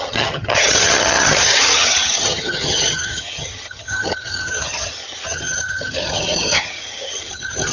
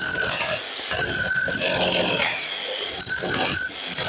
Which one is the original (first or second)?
second